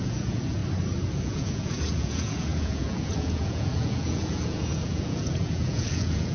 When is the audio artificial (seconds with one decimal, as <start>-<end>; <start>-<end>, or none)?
0.0-0.6; 1.2-6.3